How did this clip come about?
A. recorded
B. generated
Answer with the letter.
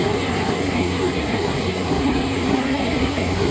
B